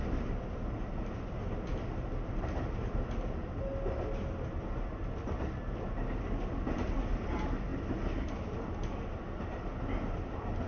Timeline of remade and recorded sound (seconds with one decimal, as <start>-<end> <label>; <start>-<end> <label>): 0.0-10.7 recorded